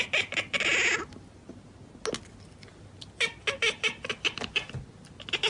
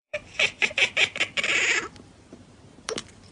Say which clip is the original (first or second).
first